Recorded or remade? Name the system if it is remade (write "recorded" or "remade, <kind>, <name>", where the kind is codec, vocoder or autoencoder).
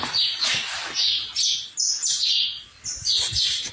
recorded